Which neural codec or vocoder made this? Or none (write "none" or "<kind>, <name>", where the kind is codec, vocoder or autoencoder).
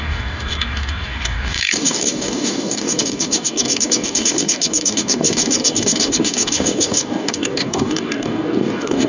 codec, DAC